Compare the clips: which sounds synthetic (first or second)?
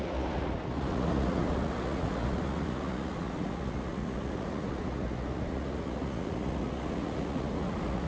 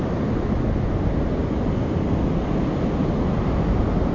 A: first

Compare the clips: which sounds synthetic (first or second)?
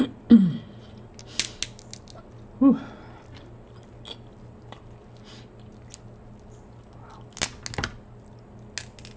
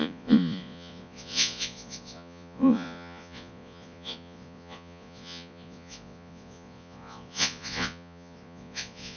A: second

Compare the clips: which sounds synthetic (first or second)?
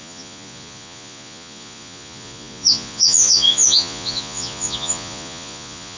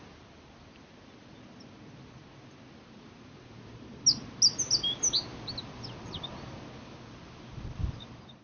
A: first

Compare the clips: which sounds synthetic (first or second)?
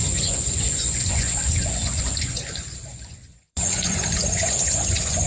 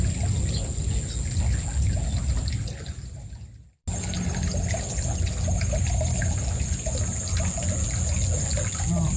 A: first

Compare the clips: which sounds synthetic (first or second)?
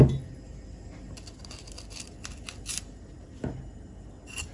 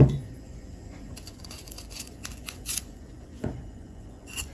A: second